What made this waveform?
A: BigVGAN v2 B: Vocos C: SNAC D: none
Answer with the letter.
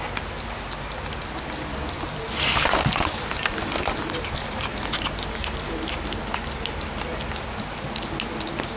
D